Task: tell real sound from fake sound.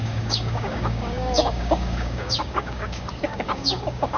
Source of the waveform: fake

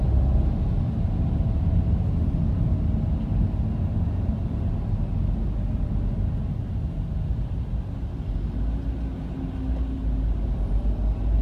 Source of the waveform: real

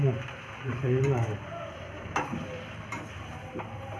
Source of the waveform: fake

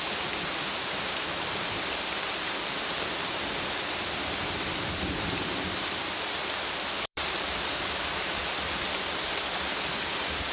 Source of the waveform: fake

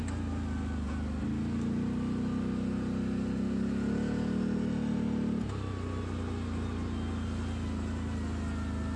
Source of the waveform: real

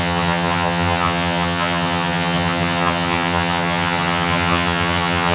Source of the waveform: fake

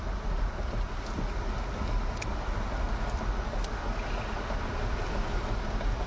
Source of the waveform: real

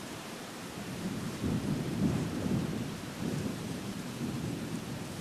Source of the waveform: fake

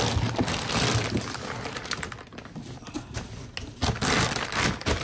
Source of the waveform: real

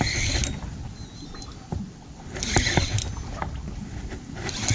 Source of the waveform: real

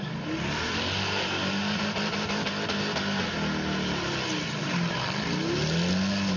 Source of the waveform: real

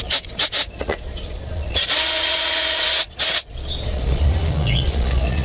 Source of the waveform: fake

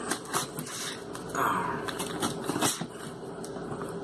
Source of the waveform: real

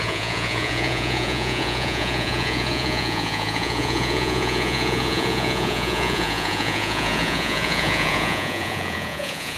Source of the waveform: fake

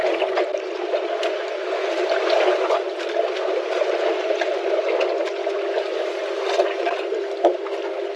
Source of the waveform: real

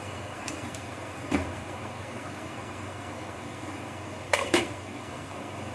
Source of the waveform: fake